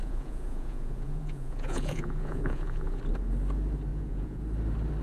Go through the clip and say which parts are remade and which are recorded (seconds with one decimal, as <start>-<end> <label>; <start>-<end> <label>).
0.0-3.0 remade; 3.0-3.9 recorded; 3.9-4.4 remade; 4.4-5.0 recorded

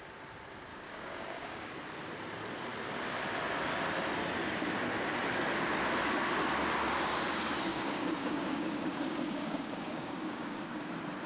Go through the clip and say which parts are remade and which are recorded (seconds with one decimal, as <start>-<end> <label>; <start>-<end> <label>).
0.0-0.7 recorded; 0.7-1.7 remade; 1.7-7.7 recorded; 7.7-10.9 remade; 10.9-11.3 recorded

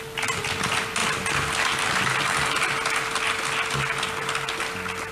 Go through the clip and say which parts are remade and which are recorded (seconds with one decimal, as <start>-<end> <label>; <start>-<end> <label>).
0.0-5.1 recorded

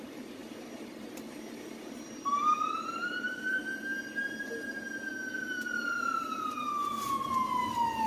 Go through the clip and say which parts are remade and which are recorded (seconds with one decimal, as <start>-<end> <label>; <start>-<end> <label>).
0.0-3.6 remade; 3.6-5.4 recorded; 5.4-6.9 remade; 6.9-8.1 recorded

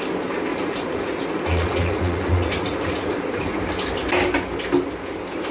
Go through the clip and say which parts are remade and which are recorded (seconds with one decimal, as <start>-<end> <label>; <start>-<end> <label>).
0.0-0.5 recorded; 0.5-3.6 remade; 3.6-5.5 recorded

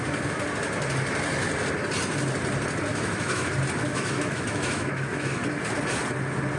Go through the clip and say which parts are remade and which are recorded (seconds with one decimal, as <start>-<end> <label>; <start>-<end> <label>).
0.0-2.9 recorded; 2.9-3.5 remade; 3.5-3.9 recorded; 3.9-5.4 remade; 5.4-6.6 recorded

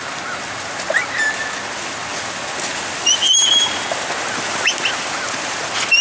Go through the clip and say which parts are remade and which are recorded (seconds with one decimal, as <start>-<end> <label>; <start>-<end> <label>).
0.0-6.0 recorded

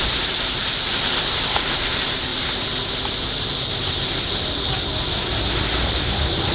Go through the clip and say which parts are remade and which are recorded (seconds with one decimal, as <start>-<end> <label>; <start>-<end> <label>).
0.0-2.3 remade; 2.3-5.6 recorded; 5.6-6.5 remade